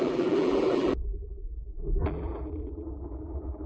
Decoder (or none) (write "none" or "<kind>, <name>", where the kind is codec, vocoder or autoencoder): vocoder, BigVGAN v2